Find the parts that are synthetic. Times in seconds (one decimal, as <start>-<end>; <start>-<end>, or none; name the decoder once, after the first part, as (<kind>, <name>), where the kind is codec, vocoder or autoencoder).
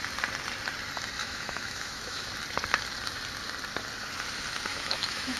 1.2-2.3 (autoencoder, DAC-VAE); 4.7-5.4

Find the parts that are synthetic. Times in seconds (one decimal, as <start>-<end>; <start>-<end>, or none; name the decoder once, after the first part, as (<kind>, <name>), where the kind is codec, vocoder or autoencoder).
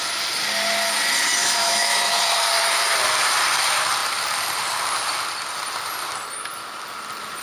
1.4-2.2 (autoencoder, DAC-VAE)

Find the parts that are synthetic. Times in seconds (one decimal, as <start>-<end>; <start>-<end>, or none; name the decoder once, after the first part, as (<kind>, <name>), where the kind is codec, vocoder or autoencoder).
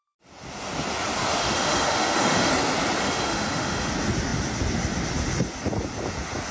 1.4-2.5 (autoencoder, DAC-VAE); 3.0-3.9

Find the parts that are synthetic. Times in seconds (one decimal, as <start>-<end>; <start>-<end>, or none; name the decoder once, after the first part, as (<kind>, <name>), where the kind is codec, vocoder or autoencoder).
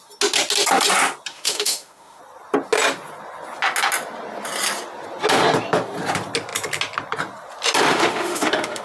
1.3-2.2 (autoencoder, DAC-VAE); 7.9-8.8